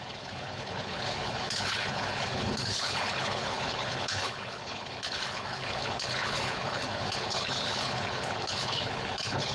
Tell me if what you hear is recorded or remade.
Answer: remade